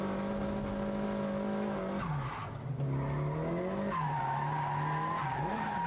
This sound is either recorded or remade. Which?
recorded